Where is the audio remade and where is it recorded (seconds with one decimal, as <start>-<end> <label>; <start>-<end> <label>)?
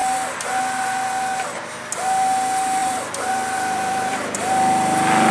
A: 0.0-2.8 recorded; 2.8-4.5 remade; 4.5-5.3 recorded